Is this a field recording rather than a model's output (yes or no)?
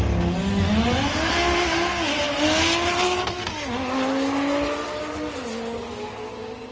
yes